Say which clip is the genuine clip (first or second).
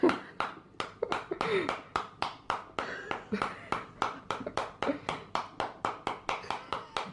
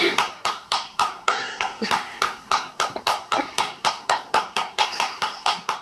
first